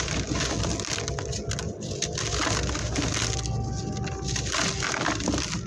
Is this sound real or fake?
real